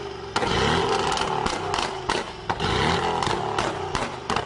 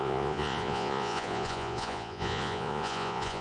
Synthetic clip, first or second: second